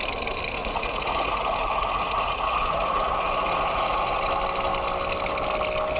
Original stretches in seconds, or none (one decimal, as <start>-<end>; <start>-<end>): 0.0-0.6; 4.2-6.0